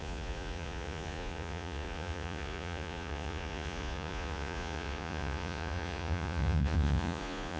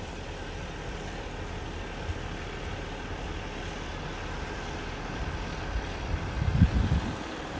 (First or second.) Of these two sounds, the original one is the second